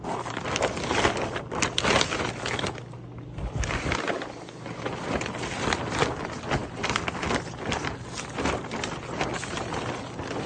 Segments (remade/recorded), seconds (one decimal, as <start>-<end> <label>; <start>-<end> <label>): 0.0-10.5 recorded